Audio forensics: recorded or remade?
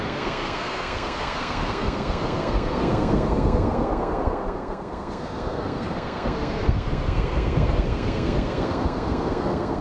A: remade